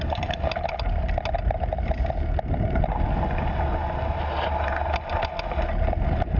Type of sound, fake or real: real